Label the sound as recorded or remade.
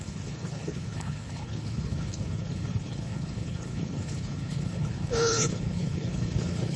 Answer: remade